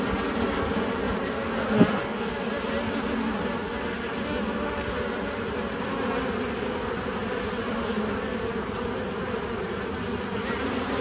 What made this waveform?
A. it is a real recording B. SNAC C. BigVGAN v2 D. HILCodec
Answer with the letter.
A